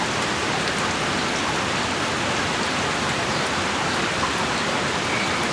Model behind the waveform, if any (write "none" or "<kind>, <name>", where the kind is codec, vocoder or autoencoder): none